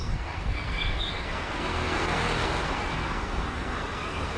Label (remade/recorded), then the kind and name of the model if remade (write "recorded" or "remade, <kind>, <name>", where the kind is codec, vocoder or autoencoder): remade, codec, SNAC